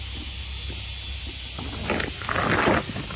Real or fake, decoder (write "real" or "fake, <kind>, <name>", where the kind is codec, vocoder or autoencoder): real